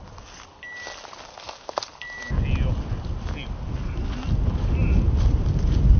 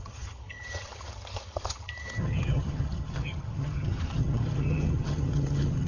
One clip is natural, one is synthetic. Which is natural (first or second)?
first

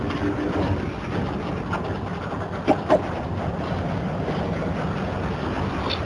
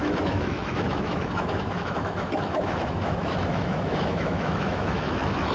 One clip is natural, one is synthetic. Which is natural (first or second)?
first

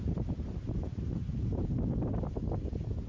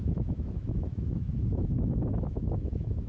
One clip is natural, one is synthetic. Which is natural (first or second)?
first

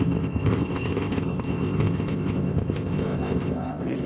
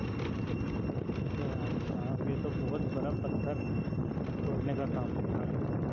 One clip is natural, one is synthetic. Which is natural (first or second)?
second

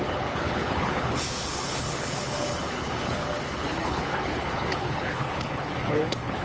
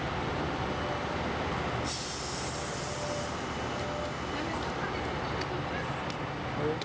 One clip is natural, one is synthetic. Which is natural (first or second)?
second